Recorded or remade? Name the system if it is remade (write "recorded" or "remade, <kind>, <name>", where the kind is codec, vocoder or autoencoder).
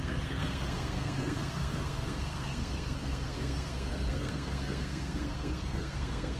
remade, codec, SNAC